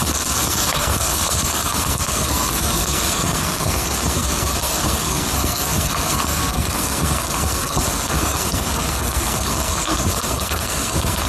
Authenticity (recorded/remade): remade